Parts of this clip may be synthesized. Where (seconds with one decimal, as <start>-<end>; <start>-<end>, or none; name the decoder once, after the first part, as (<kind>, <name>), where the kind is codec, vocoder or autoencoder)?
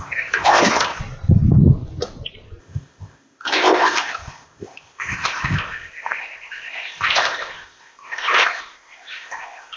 0.0-1.0 (codec, ZipCodec); 2.6-9.8